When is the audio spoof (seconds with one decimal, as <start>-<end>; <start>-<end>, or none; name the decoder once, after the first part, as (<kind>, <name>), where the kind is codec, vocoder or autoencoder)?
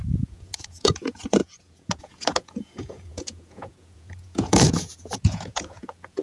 0.0-6.2 (vocoder, Vocos)